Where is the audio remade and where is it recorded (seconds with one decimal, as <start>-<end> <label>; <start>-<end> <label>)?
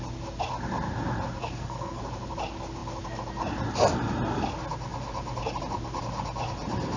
0.0-1.4 recorded; 1.4-2.0 remade; 2.0-7.0 recorded